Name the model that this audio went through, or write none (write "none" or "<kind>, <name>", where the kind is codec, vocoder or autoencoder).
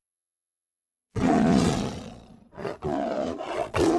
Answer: vocoder, Vocos